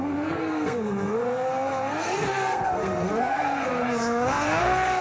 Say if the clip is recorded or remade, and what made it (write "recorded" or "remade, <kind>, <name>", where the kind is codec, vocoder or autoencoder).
remade, codec, SNAC